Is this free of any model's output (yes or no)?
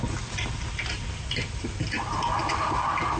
yes